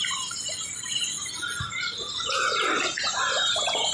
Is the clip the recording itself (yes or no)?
yes